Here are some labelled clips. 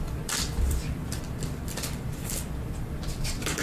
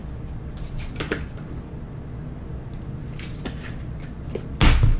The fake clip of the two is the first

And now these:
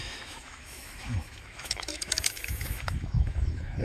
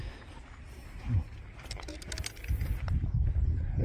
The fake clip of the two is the first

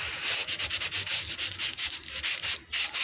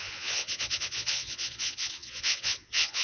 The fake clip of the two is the second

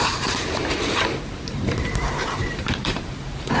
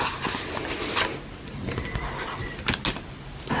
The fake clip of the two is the first